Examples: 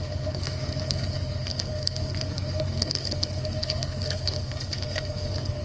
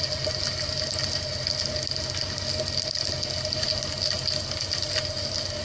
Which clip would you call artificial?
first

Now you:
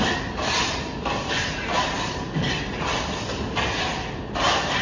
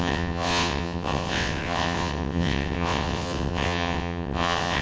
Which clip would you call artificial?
second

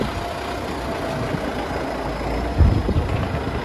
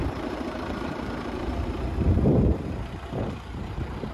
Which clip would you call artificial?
second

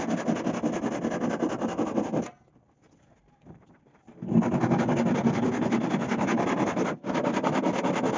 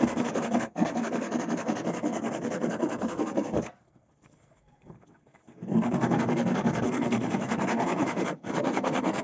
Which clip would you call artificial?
second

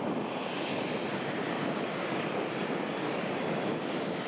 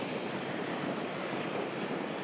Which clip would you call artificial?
second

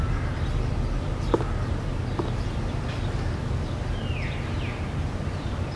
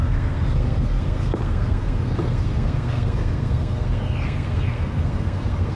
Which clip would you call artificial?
second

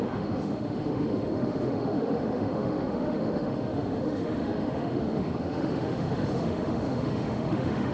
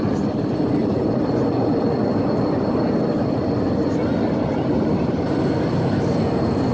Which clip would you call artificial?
first